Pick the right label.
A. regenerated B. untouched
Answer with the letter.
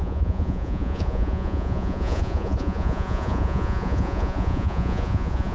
A